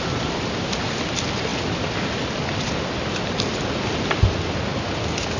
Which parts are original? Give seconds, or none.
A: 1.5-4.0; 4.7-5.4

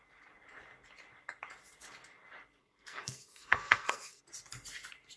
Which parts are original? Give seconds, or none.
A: 0.0-2.6; 4.2-5.2

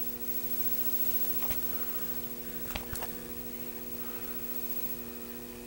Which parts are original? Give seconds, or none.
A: 0.0-5.7

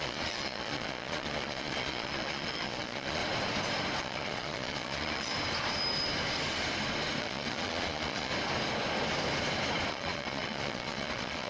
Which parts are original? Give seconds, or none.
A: 3.2-4.0; 5.3-7.2; 8.3-9.9